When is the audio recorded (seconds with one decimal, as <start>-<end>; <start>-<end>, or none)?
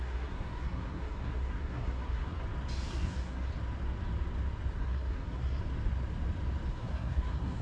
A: 2.4-2.9; 3.5-4.7; 5.6-6.7